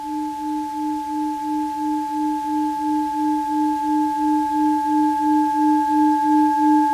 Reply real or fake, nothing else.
real